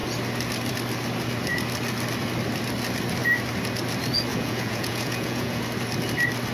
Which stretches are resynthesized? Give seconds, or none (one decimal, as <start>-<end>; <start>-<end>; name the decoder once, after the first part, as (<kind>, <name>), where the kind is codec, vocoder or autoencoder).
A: 4.3-5.6 (vocoder, Vocos)